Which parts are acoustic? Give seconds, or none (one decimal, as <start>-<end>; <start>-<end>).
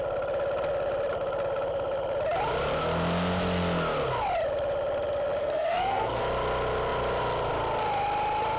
0.0-5.4; 6.2-8.6